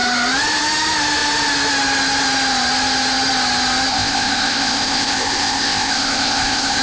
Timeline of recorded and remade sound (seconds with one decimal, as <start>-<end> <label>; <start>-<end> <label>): 0.0-3.9 recorded; 3.9-6.8 remade